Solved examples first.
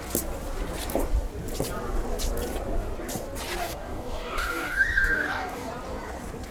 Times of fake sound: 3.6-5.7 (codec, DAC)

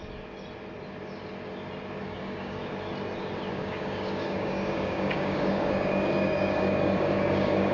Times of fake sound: 2.0-2.6 (codec, DAC); 3.5-7.7

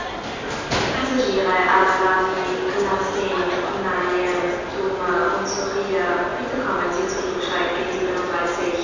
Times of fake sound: none

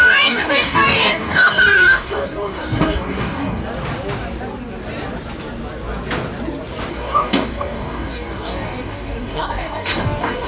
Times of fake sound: 0.0-3.6 (codec, DAC); 6.9-10.5

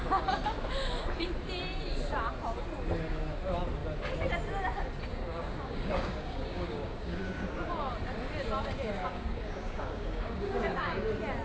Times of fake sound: 5.1-7.9 (codec, DAC); 8.9-11.0

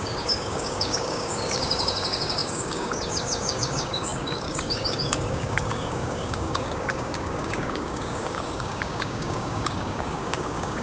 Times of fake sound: 0.0-10.8 (codec, DAC)

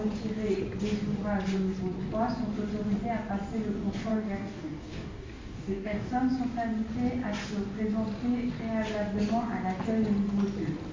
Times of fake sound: 4.1-6.1 (codec, DAC)

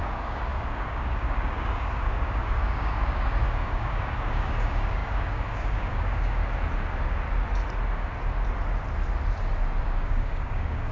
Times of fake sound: 0.0-6.4 (codec, DAC); 9.8-10.9